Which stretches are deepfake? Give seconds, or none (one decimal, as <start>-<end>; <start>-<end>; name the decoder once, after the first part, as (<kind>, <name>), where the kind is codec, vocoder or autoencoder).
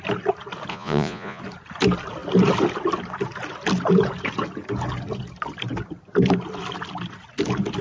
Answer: 0.7-1.4 (vocoder, Vocos)